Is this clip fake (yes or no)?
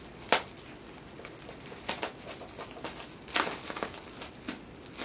no